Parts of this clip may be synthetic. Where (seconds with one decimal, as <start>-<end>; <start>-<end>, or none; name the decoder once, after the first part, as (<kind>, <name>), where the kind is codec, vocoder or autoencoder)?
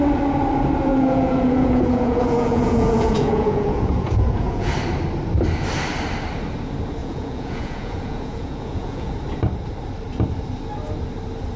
0.9-4.7 (vocoder, Vocos); 7.0-9.1